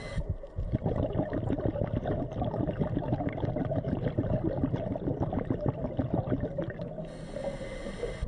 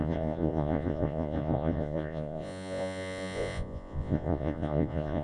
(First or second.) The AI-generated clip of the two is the second